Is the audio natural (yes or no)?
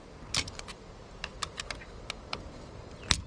yes